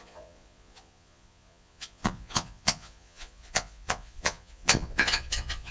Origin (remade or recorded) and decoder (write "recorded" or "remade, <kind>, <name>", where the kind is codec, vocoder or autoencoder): remade, vocoder, Vocos